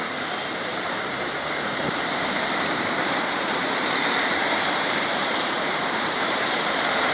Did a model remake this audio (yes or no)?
yes